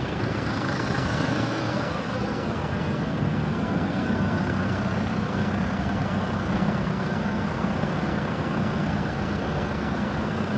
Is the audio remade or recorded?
remade